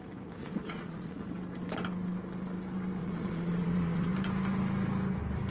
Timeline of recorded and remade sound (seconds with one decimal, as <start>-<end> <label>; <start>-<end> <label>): 0.0-0.4 recorded; 0.4-1.2 remade; 1.2-3.0 recorded; 3.0-4.1 remade; 4.1-5.5 recorded